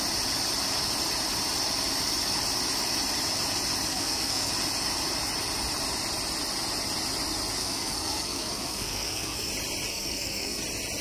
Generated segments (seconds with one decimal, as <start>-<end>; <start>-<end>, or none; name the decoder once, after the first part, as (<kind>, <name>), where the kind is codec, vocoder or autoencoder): 3.9-4.5 (codec, SNAC); 7.6-9.5; 9.9-10.6

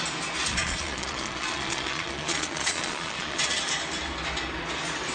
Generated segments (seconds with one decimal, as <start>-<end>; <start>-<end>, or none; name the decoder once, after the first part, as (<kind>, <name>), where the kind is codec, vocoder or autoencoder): 0.5-3.6 (vocoder, Vocos)